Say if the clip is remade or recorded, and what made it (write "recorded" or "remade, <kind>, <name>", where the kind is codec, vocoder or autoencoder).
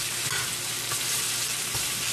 recorded